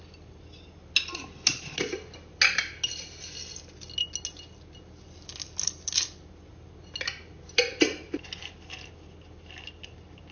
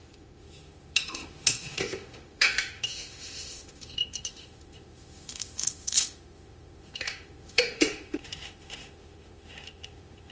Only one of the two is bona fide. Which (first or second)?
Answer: first